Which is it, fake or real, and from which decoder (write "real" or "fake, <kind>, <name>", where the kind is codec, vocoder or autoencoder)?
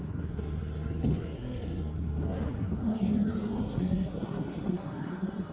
fake, codec, SNAC